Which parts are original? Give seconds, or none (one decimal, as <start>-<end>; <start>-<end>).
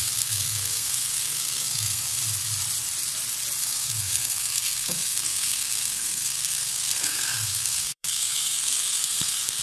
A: 2.2-3.6